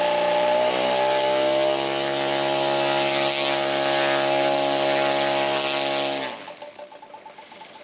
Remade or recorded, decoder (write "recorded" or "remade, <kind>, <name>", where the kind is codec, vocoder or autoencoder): recorded